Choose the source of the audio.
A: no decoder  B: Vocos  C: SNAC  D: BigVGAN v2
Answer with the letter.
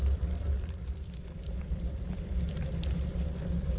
D